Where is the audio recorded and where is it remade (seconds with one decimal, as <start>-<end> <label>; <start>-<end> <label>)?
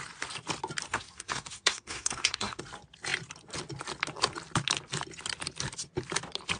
0.0-0.9 recorded; 0.9-2.6 remade; 2.6-6.6 recorded